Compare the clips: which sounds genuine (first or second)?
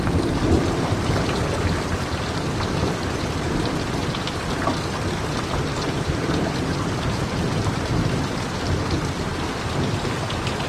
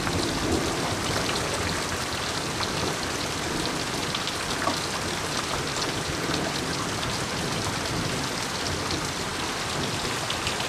second